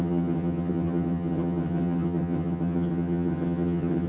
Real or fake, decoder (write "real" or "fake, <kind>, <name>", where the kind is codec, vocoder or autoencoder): fake, vocoder, HiFi-GAN